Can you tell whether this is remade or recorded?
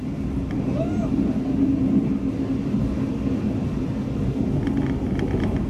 recorded